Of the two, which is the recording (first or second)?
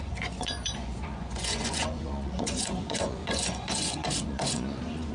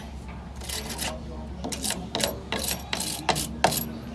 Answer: second